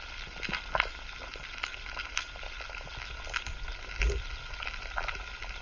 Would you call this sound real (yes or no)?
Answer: yes